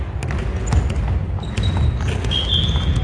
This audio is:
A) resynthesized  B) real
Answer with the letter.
B